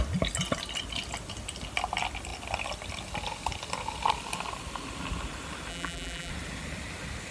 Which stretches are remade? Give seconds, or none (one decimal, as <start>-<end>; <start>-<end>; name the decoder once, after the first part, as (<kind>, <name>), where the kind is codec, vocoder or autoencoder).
5.7-6.3 (vocoder, BigVGAN v2)